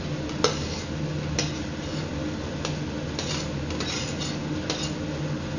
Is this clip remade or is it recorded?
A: recorded